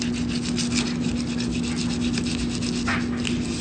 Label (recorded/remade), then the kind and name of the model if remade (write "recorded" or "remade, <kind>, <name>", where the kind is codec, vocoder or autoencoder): recorded